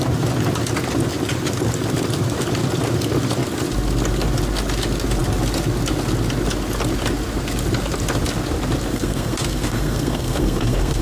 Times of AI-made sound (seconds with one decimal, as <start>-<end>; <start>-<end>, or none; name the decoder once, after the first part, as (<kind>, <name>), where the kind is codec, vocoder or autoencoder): 8.9-11.0 (codec, SNAC)